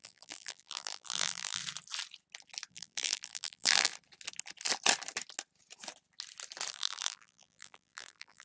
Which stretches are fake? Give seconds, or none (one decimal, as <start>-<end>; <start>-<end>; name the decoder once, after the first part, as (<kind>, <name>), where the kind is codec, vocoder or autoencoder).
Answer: 0.0-1.6 (vocoder, BigVGAN v2); 2.7-3.9; 6.7-8.4